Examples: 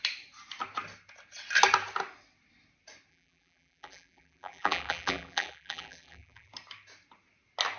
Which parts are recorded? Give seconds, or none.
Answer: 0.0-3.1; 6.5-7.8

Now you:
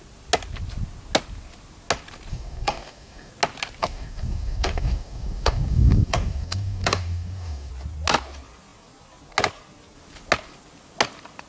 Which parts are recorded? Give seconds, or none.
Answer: 0.0-2.3; 3.3-3.8; 7.7-11.5

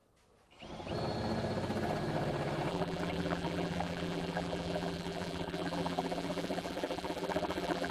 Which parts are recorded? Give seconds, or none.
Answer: 0.0-2.7

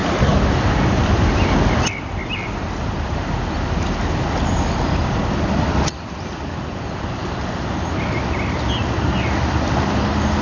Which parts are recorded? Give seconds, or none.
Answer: 2.3-10.4

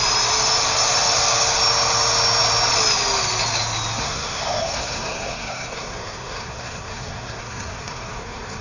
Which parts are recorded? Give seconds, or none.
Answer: 0.0-4.0